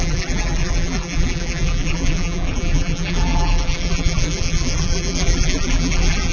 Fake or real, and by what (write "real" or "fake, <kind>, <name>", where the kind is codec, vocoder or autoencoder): fake, vocoder, BigVGAN v2